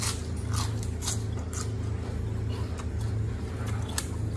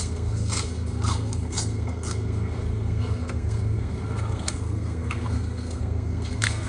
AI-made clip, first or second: second